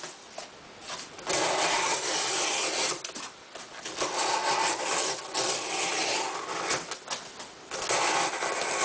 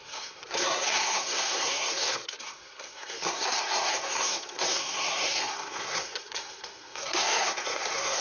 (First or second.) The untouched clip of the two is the first